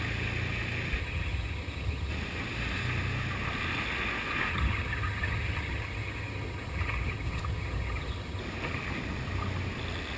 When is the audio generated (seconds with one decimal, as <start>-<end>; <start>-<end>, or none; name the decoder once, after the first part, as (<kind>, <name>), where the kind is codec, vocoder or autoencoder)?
1.0-2.1 (vocoder, HiFi-GAN); 4.5-8.4